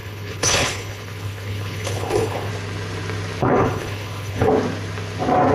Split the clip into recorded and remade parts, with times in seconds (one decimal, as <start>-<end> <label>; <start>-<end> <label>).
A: 0.0-2.5 remade; 2.5-3.4 recorded; 3.4-4.5 remade; 4.5-5.5 recorded